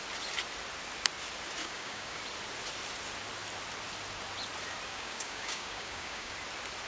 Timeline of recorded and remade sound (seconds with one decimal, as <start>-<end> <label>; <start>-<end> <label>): 0.0-1.6 recorded; 1.6-2.2 remade; 2.2-4.9 recorded; 4.9-6.3 remade; 6.3-6.9 recorded